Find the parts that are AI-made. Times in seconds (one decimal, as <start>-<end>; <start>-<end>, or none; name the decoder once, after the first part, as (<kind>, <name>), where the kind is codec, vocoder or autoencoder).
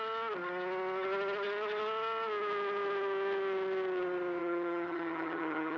4.4-5.8 (vocoder, HiFi-GAN)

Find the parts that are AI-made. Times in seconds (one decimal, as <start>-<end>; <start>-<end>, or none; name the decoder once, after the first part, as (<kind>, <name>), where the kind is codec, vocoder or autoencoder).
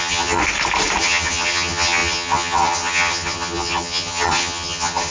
0.0-0.4 (vocoder, HiFi-GAN); 1.0-5.1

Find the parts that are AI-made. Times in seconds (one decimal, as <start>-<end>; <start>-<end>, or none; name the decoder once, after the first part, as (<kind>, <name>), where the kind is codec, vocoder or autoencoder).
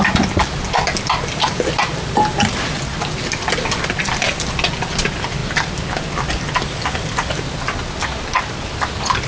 none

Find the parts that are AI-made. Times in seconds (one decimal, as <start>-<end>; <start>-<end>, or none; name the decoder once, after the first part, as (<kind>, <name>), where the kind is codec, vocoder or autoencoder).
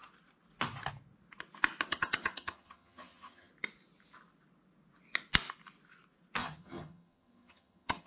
1.9-3.5 (vocoder, HiFi-GAN); 6.4-8.1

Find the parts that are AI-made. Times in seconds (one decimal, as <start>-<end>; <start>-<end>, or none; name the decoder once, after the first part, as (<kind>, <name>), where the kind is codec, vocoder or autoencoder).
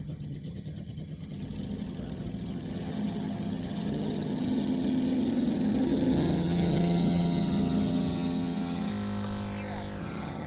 0.0-8.9 (vocoder, HiFi-GAN); 10.0-10.5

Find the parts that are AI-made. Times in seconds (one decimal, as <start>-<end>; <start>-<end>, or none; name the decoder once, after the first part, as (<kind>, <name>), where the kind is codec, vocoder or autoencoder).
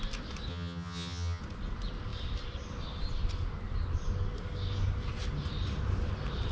0.5-1.4 (vocoder, HiFi-GAN)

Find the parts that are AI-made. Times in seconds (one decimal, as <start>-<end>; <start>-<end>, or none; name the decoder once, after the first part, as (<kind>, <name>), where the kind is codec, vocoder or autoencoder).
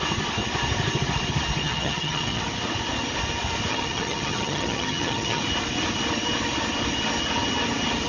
1.6-2.4 (vocoder, HiFi-GAN); 3.7-5.4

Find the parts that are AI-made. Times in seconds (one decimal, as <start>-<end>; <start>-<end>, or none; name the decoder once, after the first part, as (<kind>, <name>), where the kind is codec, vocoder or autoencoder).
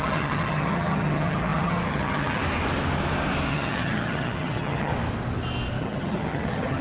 0.0-2.4 (vocoder, HiFi-GAN); 3.5-4.9; 5.8-6.8